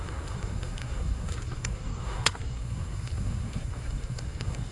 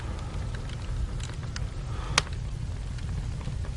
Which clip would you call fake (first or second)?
first